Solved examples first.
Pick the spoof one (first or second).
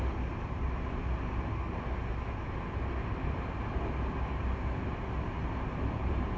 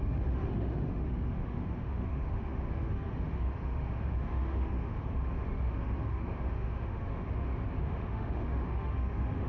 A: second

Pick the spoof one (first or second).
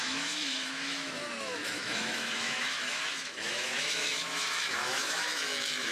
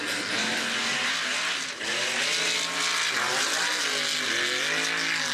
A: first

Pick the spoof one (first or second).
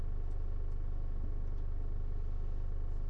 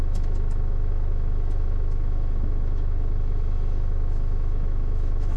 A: second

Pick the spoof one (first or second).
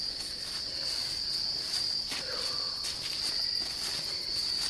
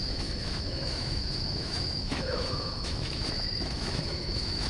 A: second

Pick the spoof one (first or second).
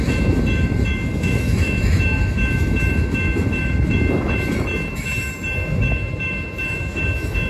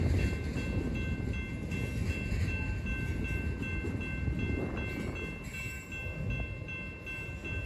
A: first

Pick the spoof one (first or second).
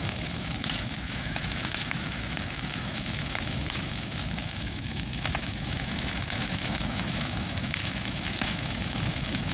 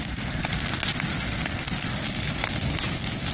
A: first